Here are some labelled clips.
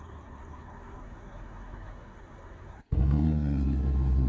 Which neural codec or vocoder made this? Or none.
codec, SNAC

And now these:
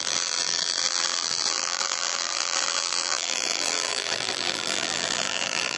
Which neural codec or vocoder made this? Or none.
vocoder, BigVGAN v2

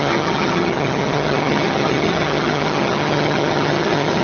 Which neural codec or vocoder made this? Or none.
vocoder, HiFi-GAN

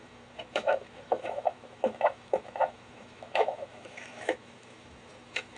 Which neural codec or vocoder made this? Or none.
autoencoder, DAC-VAE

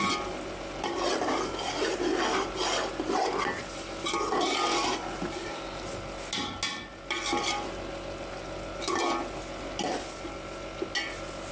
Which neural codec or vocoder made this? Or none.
none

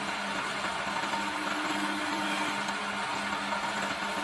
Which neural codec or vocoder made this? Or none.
none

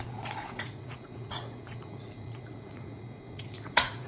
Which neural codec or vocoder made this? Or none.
vocoder, Vocos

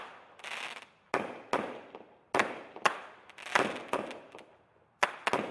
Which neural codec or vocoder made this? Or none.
none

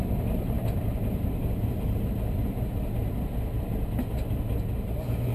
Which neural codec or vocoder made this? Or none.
none